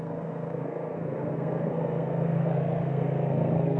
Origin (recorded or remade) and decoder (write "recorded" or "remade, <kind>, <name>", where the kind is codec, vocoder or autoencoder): remade, codec, SNAC